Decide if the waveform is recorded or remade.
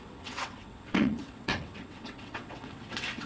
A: remade